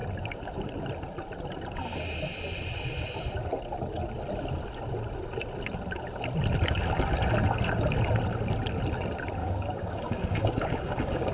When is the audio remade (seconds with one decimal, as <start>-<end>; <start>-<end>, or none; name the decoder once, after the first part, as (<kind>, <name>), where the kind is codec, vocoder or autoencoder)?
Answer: 9.4-11.3 (codec, DAC)

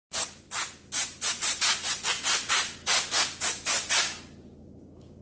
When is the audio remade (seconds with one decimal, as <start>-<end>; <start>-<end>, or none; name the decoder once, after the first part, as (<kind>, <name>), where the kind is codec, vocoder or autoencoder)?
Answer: 4.6-5.2 (codec, DAC)

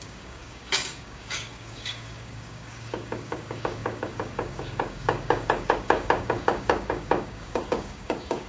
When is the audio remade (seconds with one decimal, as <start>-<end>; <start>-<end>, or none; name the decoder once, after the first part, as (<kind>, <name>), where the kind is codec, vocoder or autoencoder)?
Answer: 0.0-8.5 (codec, DAC)

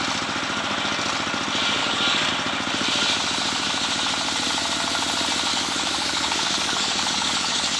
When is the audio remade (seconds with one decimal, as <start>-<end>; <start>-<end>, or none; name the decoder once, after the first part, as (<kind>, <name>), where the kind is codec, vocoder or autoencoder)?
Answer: 1.8-2.3 (codec, DAC); 5.5-7.8

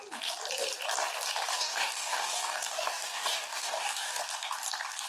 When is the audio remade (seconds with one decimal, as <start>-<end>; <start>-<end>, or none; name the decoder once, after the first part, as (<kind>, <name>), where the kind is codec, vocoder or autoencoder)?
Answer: 1.5-4.2 (codec, DAC)

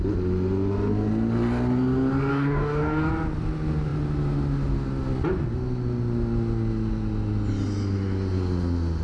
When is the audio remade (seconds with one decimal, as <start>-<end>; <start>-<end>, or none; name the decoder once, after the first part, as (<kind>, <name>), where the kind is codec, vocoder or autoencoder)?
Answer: 2.3-3.1 (codec, DAC)

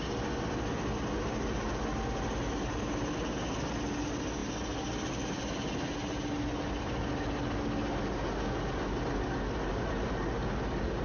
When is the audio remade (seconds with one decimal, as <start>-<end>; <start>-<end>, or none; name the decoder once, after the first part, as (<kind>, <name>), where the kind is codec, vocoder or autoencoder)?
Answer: none

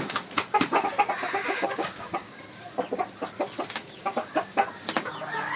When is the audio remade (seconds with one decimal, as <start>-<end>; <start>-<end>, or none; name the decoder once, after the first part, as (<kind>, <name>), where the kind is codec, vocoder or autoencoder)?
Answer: 1.4-2.4 (codec, DAC); 3.8-4.6